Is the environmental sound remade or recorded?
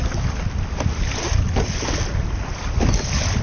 recorded